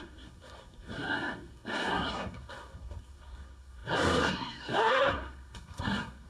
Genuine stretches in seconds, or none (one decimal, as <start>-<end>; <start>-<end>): none